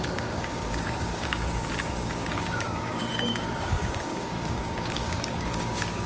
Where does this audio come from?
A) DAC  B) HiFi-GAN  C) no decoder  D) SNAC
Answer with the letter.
A